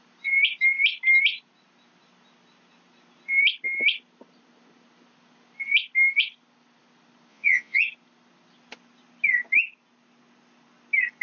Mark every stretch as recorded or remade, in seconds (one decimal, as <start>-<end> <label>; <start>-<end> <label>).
0.0-7.3 recorded; 7.3-7.8 remade; 7.8-11.2 recorded